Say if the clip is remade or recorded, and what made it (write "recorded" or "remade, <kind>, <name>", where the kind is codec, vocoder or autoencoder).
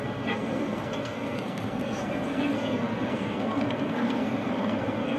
remade, codec, SNAC